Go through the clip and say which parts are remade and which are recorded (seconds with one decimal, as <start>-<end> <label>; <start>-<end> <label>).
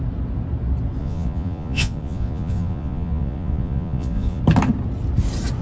0.0-1.0 recorded; 1.0-4.4 remade; 4.4-5.6 recorded